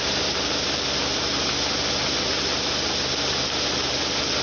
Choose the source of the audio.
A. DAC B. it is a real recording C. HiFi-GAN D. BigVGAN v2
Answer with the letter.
B